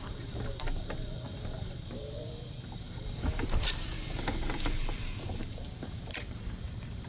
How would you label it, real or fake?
fake